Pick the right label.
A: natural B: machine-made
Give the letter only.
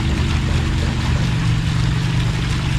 A